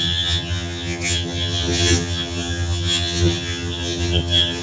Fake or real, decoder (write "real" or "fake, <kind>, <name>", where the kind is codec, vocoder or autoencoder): fake, vocoder, HiFi-GAN